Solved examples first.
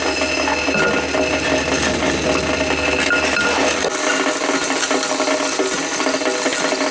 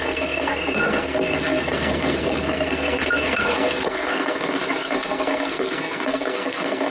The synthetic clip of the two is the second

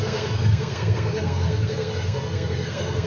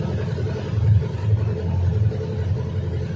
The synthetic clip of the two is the first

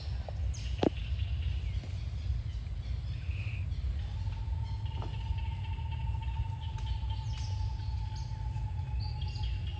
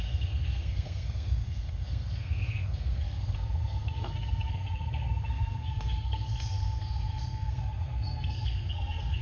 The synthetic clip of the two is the second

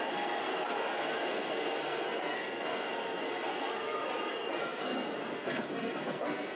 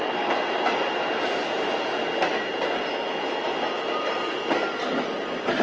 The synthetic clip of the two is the first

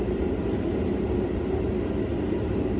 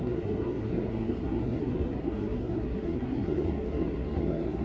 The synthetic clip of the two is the second